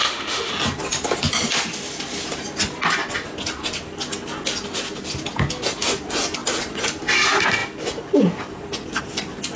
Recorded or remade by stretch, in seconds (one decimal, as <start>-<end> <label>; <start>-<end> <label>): 0.0-0.5 remade; 0.5-9.6 recorded